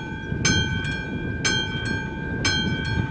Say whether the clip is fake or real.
real